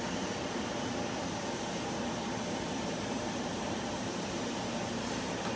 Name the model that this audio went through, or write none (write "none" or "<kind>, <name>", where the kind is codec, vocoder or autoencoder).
vocoder, BigVGAN v2